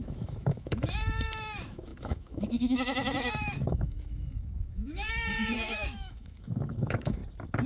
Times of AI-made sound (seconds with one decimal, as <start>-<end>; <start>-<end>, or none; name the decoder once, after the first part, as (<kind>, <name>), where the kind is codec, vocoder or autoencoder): 0.0-7.2 (autoencoder, DAC-VAE)